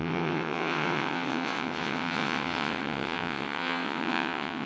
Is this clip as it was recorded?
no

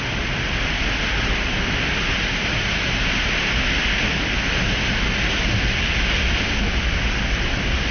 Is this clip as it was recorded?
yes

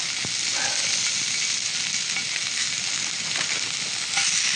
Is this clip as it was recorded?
yes